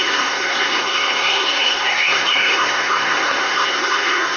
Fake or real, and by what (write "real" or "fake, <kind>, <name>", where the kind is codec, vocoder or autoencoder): fake, codec, SNAC